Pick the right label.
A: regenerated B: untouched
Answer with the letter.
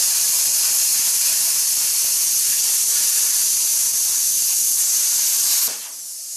B